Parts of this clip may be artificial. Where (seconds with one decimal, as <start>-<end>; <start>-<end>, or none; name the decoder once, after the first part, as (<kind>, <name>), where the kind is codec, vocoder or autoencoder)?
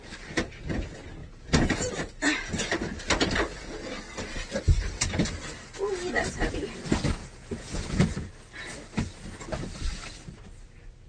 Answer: 1.2-1.9 (vocoder, Vocos); 7.2-8.3